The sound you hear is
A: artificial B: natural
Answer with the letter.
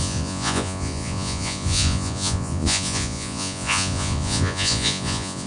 A